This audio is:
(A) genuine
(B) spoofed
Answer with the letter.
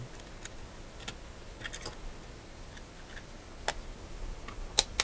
A